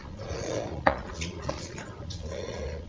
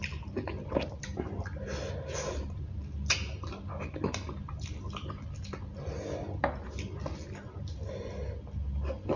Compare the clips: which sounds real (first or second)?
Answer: second